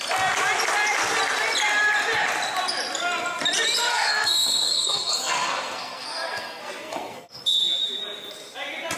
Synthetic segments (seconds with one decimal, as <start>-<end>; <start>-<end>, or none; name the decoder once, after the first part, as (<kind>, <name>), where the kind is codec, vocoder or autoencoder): 3.9-7.4 (codec, SNAC)